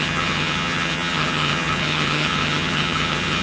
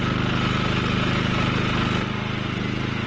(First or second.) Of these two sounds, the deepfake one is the first